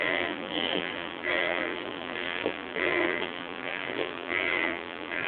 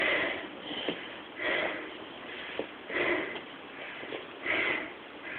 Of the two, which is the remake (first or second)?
first